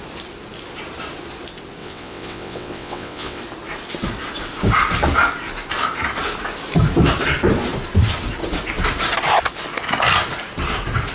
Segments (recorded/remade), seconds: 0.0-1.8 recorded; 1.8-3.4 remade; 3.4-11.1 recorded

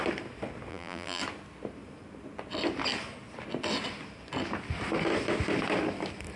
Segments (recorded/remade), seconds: 0.0-0.7 recorded; 0.7-1.2 remade; 1.2-6.4 recorded